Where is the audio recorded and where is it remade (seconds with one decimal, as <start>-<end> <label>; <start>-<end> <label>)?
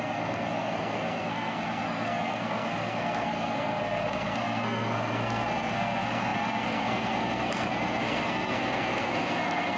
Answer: 0.0-9.8 remade